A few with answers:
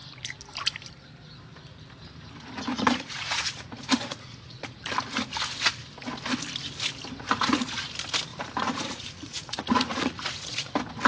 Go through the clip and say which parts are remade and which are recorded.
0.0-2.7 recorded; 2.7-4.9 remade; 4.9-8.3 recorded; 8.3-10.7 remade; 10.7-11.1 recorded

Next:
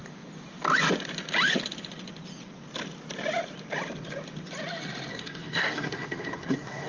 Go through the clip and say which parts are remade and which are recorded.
0.0-5.1 recorded; 5.1-6.9 remade

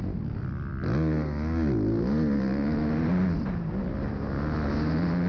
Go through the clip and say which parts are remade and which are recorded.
0.0-5.3 recorded

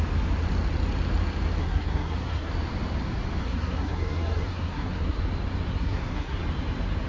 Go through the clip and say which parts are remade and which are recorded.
0.0-1.6 recorded; 1.6-2.5 remade; 2.5-3.4 recorded; 3.4-5.2 remade; 5.2-5.7 recorded; 5.7-6.4 remade; 6.4-7.1 recorded